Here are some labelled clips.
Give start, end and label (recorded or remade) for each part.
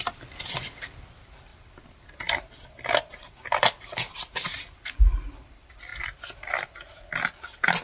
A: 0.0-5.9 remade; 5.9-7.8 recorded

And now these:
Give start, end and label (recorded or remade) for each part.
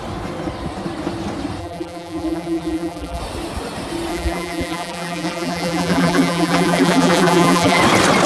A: 0.0-1.6 recorded; 1.6-3.2 remade; 3.2-4.1 recorded; 4.1-7.8 remade; 7.8-8.3 recorded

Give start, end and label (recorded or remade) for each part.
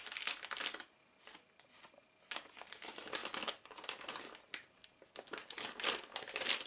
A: 0.0-6.7 recorded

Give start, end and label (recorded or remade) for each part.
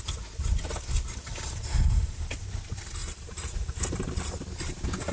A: 0.0-1.3 recorded; 1.3-2.3 remade; 2.3-3.0 recorded; 3.0-4.1 remade; 4.1-5.1 recorded